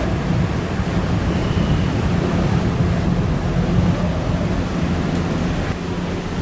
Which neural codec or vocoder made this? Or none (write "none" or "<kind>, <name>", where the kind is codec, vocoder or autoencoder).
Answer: none